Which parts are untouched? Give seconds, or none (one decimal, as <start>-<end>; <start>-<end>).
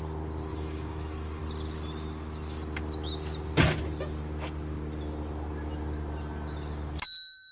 0.0-0.5; 1.4-7.5